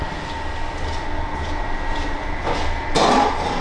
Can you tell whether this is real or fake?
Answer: real